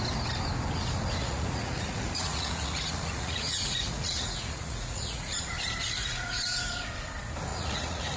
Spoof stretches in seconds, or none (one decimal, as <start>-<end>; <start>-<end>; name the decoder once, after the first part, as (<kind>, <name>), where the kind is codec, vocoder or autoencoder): 1.2-5.3 (vocoder, Vocos); 6.0-6.7; 7.5-8.2